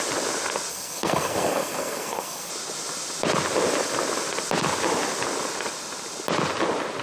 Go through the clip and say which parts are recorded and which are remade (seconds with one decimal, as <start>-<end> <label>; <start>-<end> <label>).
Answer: 0.0-0.7 recorded; 0.7-2.5 remade; 2.5-7.0 recorded